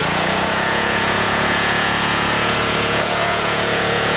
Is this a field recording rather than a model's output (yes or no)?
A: no